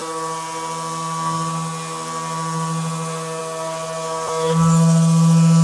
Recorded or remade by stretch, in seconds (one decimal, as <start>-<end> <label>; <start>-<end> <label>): 0.0-5.6 recorded